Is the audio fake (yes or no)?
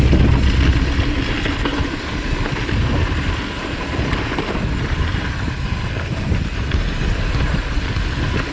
no